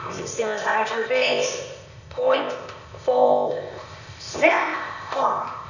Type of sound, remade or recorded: remade